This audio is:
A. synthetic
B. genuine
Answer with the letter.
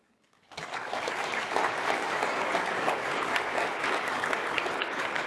A